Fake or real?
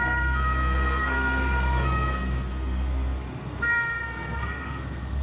fake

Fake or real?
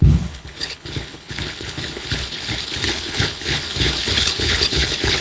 fake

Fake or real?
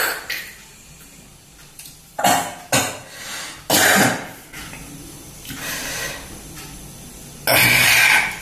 real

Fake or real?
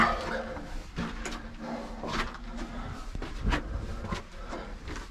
real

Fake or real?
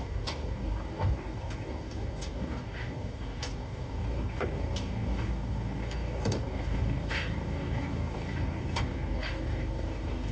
fake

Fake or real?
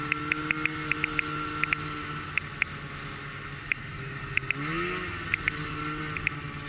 real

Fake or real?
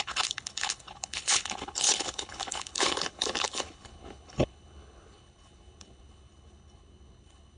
fake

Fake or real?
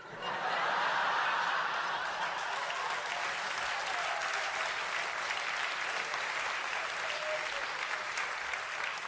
real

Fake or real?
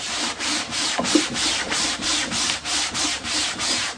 fake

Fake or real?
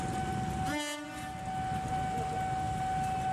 real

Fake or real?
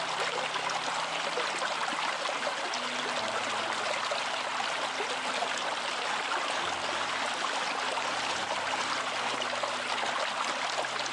real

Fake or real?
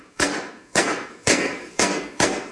fake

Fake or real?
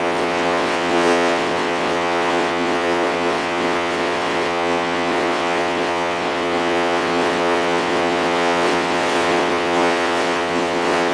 fake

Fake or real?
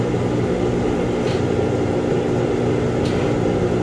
real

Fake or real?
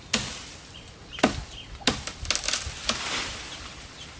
real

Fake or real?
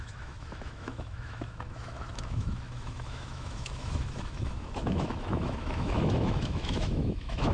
fake